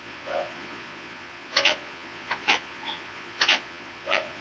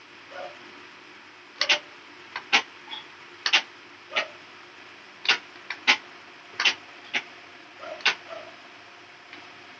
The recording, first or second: second